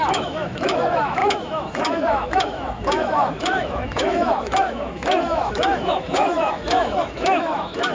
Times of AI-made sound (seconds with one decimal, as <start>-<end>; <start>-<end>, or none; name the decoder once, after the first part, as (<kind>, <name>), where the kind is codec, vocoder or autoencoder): 0.0-7.9 (autoencoder, DAC-VAE)